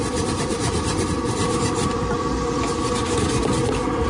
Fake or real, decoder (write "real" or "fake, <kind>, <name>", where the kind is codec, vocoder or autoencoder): real